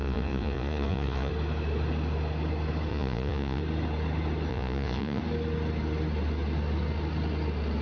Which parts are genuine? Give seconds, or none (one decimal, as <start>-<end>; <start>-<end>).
1.3-2.9; 3.6-4.5; 5.2-7.8